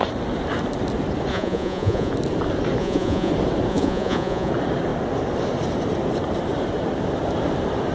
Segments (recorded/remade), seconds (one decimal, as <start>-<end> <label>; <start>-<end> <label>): 0.0-1.3 recorded; 1.3-2.1 remade; 2.1-2.8 recorded; 2.8-3.3 remade; 3.3-3.7 recorded; 3.7-4.5 remade; 4.5-7.9 recorded